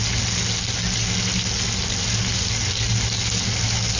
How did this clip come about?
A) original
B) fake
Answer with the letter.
A